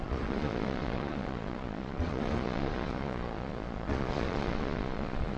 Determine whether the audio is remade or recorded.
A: remade